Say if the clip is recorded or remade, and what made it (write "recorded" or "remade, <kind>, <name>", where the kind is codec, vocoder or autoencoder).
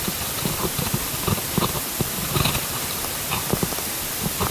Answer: recorded